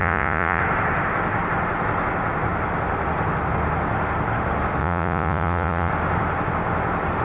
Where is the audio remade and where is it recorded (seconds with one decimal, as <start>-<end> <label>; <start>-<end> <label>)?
0.0-0.6 remade; 0.6-4.8 recorded; 4.8-5.9 remade; 5.9-7.2 recorded

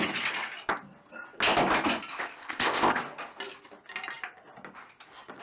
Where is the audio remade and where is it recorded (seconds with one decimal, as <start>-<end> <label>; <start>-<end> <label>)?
0.0-2.1 recorded; 2.1-3.0 remade; 3.0-5.4 recorded

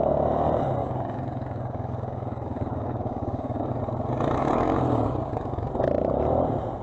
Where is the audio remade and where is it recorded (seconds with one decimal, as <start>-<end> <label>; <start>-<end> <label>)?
0.0-0.8 recorded; 0.8-3.7 remade; 3.7-4.4 recorded; 4.4-5.7 remade; 5.7-6.8 recorded

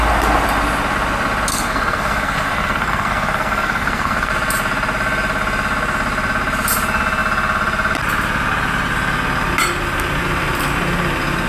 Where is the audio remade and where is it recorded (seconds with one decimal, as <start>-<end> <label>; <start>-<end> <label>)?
0.0-1.5 recorded; 1.5-4.3 remade; 4.3-11.5 recorded

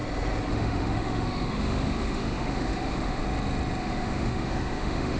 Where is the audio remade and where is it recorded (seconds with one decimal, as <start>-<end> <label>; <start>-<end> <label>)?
0.0-0.5 recorded; 0.5-3.2 remade; 3.2-3.8 recorded; 3.8-5.2 remade

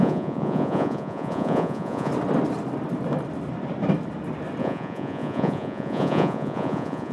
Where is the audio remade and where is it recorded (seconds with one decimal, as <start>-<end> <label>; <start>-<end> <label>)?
0.0-2.1 remade; 2.1-4.6 recorded; 4.6-7.1 remade

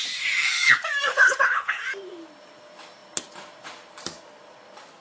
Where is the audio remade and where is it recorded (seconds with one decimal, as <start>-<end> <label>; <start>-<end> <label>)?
0.0-1.1 recorded; 1.1-1.8 remade; 1.8-5.0 recorded

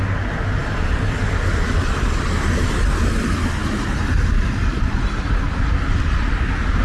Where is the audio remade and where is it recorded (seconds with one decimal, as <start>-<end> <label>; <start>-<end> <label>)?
0.0-6.8 recorded